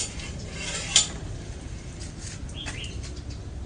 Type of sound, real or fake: fake